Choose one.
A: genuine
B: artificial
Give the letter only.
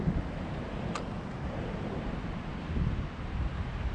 A